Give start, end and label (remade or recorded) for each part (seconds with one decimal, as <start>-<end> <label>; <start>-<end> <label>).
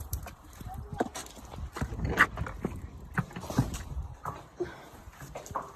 0.0-1.2 remade; 1.2-3.5 recorded; 3.5-5.8 remade